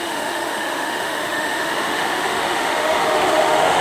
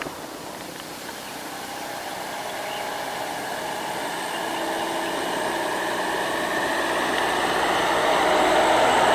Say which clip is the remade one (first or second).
first